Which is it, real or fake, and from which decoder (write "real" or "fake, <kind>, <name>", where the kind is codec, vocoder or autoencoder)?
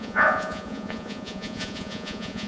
fake, vocoder, Vocos